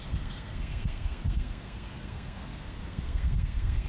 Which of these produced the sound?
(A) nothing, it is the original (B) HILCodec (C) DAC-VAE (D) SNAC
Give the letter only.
D